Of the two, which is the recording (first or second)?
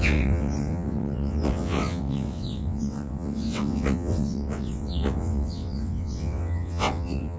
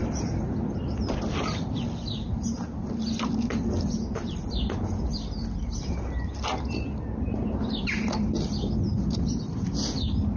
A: second